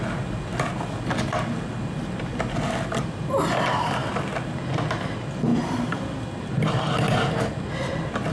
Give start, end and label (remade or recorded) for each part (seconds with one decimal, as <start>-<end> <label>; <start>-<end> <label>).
0.0-8.3 recorded